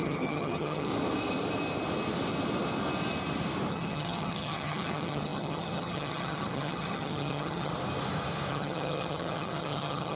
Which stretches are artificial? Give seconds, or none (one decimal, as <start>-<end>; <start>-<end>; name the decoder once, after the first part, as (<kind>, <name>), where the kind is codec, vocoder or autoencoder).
0.0-0.9 (vocoder, HiFi-GAN); 3.7-7.7; 8.5-10.2